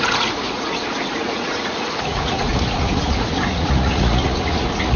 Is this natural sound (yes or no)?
no